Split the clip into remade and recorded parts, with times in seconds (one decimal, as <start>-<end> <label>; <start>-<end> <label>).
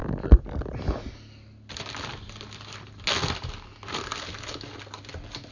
0.0-5.5 recorded